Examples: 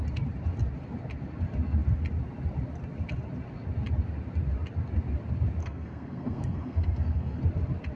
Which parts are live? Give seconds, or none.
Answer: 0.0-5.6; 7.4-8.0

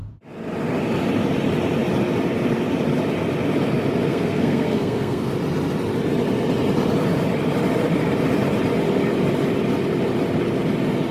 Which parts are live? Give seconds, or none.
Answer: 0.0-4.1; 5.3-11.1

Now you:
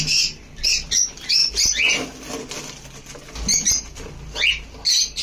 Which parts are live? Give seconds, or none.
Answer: 0.0-5.2

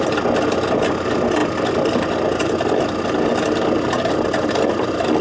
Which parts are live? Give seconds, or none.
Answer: 0.0-5.2

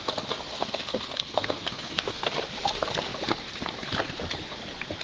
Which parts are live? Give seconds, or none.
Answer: 0.0-0.5; 2.3-5.0